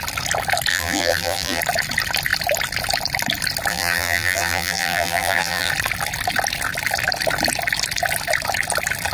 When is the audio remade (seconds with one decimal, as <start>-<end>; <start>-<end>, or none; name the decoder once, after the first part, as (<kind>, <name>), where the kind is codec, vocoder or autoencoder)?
0.7-1.6 (vocoder, BigVGAN v2); 3.7-5.7